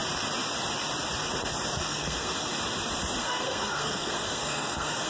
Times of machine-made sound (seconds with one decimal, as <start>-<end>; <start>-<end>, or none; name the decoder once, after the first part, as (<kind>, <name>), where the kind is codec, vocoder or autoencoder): 1.8-2.5 (codec, SNAC); 3.2-5.1

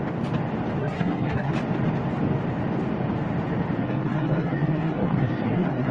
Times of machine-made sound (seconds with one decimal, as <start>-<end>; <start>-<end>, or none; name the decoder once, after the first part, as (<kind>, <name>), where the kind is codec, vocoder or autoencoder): 0.8-1.5 (codec, SNAC); 3.8-5.9

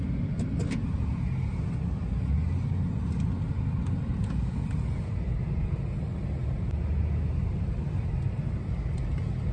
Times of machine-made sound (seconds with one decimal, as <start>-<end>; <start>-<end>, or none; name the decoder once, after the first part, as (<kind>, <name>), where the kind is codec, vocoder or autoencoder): none

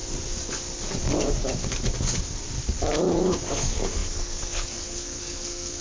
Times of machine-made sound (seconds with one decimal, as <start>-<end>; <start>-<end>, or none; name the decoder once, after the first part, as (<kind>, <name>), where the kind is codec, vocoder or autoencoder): 3.5-5.8 (codec, SNAC)

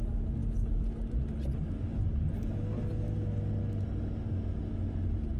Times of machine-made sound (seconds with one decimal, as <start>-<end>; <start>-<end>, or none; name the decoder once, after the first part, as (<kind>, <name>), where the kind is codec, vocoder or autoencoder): none

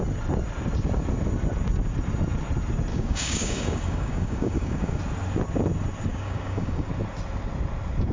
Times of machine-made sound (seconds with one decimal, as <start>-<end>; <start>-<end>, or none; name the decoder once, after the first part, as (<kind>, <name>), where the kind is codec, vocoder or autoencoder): 2.9-5.0 (codec, DAC); 6.1-6.9

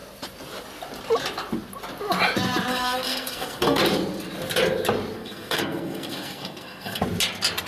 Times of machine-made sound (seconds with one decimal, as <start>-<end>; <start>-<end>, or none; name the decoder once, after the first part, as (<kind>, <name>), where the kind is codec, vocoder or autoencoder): 2.7-3.8 (codec, SNAC); 5.2-7.0